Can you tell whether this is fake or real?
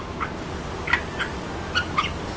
real